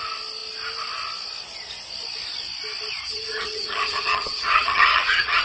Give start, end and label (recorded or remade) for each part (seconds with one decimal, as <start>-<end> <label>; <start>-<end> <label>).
0.0-3.0 recorded; 3.0-5.4 remade